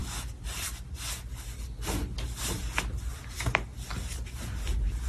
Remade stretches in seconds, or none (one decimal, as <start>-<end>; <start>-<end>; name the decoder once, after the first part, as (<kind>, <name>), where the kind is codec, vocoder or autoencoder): none